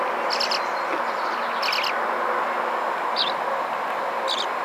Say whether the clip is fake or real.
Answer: real